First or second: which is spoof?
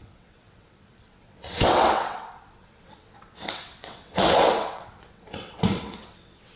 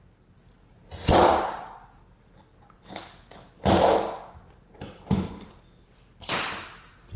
first